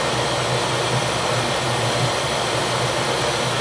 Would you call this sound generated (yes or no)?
no